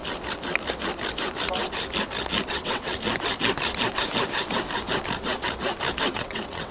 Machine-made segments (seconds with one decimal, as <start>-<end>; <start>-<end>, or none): 2.5-2.9; 6.1-6.7